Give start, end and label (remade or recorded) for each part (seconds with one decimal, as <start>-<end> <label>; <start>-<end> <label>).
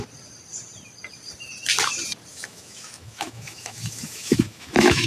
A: 0.0-2.3 recorded; 2.3-5.1 remade